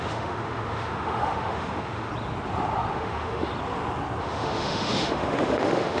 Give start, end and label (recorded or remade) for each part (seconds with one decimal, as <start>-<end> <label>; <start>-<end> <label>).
0.0-2.1 remade; 2.1-2.9 recorded; 2.9-3.5 remade; 3.5-4.2 recorded; 4.2-6.0 remade